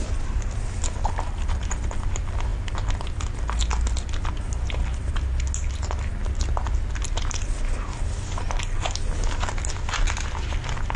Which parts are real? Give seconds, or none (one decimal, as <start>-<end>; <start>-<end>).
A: 0.0-11.0